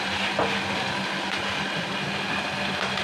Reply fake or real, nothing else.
real